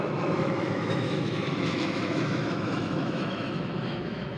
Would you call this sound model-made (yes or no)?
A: yes